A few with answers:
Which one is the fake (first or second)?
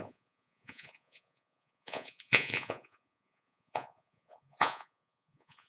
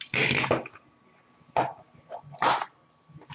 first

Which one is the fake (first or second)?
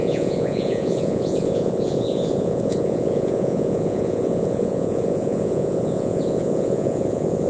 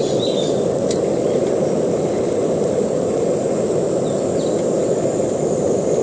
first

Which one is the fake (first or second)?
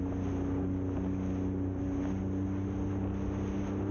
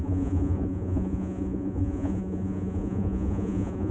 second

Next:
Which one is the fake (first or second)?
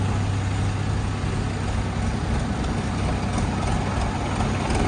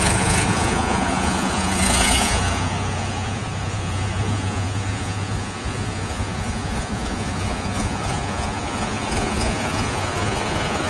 second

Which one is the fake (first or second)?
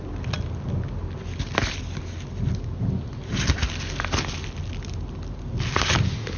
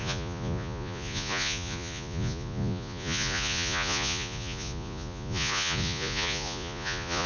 second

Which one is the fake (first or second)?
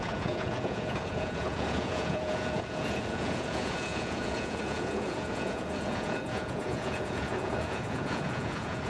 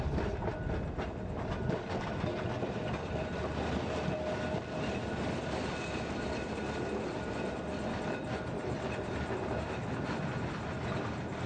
first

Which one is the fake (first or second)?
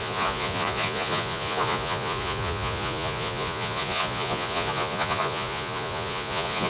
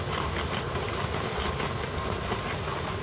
first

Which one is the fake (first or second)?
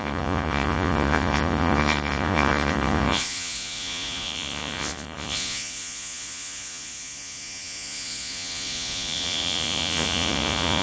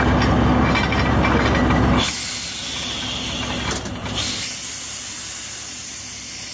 first